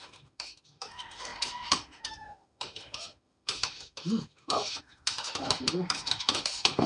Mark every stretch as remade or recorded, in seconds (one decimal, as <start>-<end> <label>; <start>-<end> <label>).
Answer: 0.0-6.9 remade